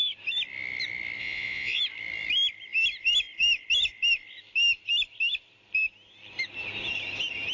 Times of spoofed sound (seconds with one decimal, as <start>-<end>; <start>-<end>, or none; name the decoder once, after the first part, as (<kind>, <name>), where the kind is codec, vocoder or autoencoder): 1.2-1.8 (vocoder, Vocos)